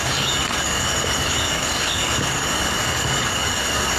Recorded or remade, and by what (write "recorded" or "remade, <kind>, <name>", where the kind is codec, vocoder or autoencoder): remade, codec, DAC